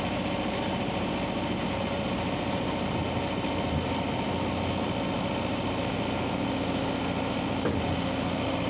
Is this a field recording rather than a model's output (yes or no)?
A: yes